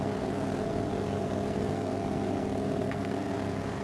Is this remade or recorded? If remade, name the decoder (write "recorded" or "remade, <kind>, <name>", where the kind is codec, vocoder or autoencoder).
remade, codec, SNAC